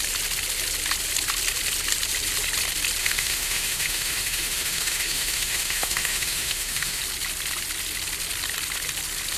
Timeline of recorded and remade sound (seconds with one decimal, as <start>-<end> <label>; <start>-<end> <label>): 0.0-3.0 recorded; 3.0-7.0 remade; 7.0-9.4 recorded